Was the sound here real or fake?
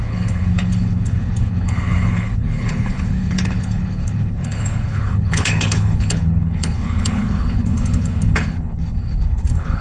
fake